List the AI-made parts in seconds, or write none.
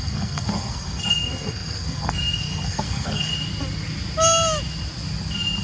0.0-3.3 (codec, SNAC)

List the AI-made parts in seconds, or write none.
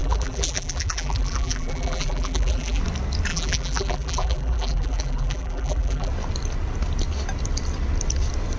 0.0-2.8 (vocoder, BigVGAN v2); 3.3-6.1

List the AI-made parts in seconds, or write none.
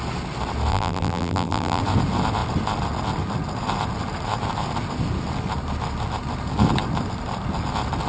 0.7-1.8 (vocoder, BigVGAN v2)